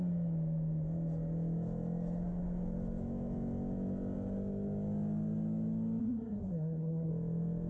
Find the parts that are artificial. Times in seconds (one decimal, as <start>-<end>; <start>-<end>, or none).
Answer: 6.0-7.1